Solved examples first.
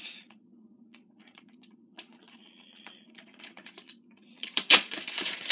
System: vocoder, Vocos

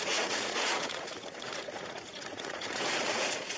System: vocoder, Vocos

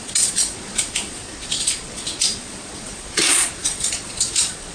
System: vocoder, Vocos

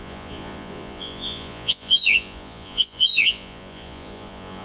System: vocoder, Vocos